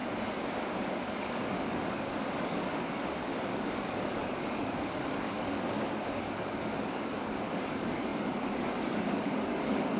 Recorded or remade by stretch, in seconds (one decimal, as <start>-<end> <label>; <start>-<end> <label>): 0.0-0.7 recorded; 0.7-10.0 remade